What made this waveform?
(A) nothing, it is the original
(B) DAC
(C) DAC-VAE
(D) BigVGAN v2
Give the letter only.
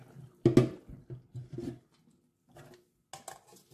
A